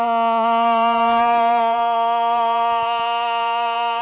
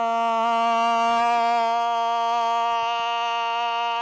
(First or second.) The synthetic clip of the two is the first